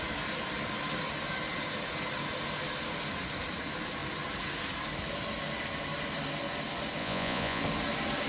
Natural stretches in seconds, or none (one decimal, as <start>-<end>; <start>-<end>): 0.0-7.0; 7.6-8.3